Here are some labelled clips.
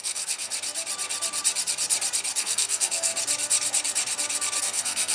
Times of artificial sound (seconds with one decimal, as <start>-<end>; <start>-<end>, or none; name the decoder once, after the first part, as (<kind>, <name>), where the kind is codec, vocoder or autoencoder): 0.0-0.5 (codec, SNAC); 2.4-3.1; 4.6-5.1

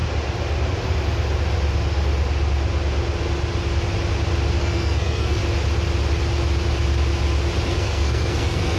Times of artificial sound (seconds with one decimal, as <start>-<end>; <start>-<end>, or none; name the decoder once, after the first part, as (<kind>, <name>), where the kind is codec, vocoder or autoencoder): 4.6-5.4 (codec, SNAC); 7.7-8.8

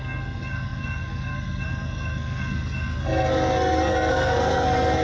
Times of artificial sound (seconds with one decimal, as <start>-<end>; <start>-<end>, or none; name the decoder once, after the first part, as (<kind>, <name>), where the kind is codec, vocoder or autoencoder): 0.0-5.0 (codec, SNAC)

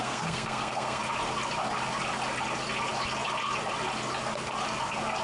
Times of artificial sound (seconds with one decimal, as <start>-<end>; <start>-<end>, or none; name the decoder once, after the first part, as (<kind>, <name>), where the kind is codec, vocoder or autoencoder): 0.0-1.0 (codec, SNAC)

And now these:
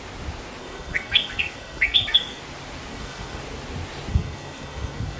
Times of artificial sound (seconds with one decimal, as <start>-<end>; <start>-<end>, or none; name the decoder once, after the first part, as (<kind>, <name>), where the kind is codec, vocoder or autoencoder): 0.6-2.4 (codec, SNAC); 2.9-3.4; 4.1-5.2